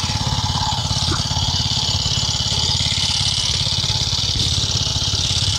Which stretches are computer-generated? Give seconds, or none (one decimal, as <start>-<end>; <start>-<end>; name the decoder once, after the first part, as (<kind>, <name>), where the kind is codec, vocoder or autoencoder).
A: none